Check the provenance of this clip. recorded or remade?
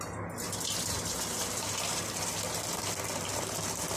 recorded